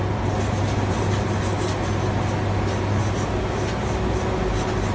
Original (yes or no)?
yes